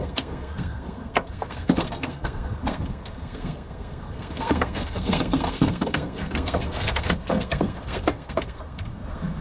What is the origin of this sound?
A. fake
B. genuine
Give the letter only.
A